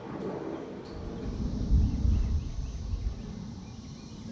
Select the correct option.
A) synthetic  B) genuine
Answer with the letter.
B